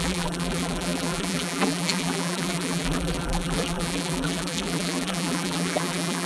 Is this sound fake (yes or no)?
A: yes